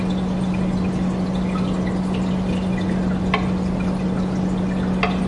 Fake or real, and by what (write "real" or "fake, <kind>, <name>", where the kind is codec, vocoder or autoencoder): real